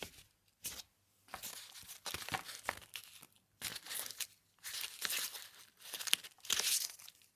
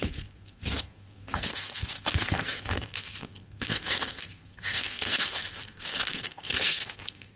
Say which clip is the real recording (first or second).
first